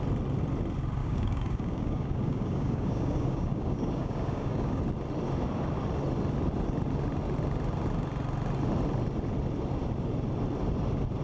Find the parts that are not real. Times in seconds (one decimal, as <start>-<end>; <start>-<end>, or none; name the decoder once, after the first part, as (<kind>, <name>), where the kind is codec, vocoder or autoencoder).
1.0-4.8 (codec, DAC)